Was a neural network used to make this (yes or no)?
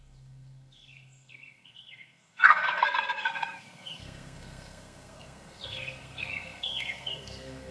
yes